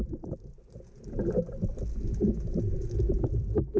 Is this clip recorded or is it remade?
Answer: recorded